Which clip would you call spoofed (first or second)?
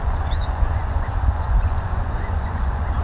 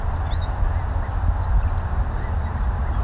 first